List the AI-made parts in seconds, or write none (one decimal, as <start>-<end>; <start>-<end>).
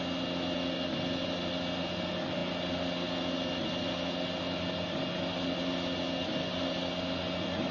none